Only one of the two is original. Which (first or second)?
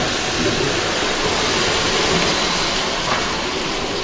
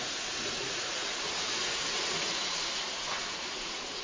first